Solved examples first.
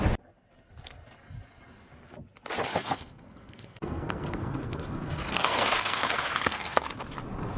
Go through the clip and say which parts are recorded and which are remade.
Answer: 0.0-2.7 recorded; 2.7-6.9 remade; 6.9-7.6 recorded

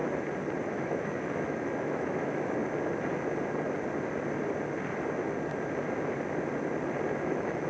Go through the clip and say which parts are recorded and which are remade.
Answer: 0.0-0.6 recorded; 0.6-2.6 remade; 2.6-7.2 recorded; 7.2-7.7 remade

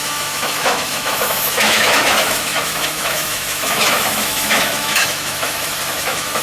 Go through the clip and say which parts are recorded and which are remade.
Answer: 0.0-6.4 remade

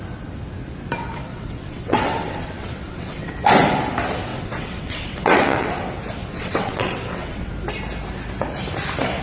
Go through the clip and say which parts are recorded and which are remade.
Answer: 0.0-1.3 recorded; 1.3-3.3 remade; 3.3-4.3 recorded; 4.3-5.7 remade; 5.7-6.3 recorded; 6.3-7.5 remade; 7.5-9.2 recorded

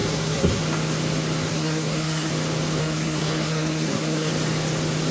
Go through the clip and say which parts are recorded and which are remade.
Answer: 0.0-0.6 remade; 0.6-1.5 recorded; 1.5-2.3 remade; 2.3-2.8 recorded; 2.8-4.3 remade; 4.3-5.1 recorded

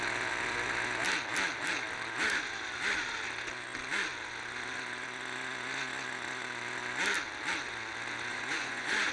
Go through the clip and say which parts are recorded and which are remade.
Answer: 0.0-8.3 recorded; 8.3-9.1 remade